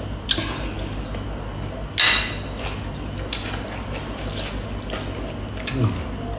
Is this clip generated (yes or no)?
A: no